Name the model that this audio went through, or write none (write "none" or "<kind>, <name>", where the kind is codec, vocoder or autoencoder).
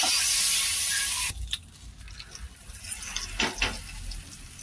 none